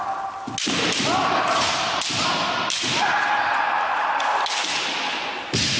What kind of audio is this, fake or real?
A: real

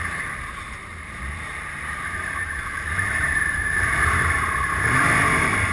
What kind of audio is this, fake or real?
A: fake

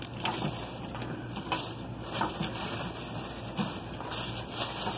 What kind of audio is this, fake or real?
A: fake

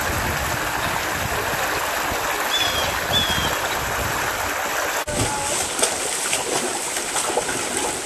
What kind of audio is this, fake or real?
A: real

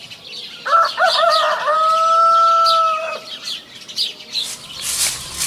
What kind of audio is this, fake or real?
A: real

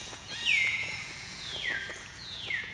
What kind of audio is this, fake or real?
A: fake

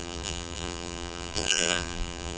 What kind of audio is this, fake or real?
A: fake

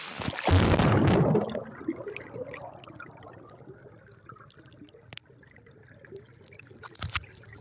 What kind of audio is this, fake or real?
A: real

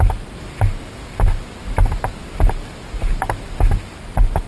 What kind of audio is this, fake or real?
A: real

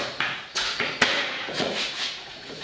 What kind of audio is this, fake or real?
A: fake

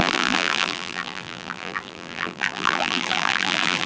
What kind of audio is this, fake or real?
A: fake